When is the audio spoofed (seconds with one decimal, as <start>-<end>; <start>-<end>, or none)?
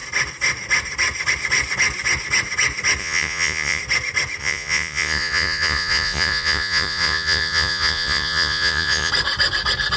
3.0-3.8; 4.4-9.1